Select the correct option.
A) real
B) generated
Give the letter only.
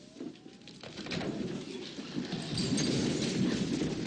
A